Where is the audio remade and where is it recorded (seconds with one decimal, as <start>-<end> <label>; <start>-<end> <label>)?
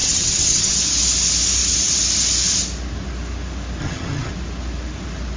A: 0.0-0.7 remade; 0.7-3.8 recorded; 3.8-4.3 remade; 4.3-5.4 recorded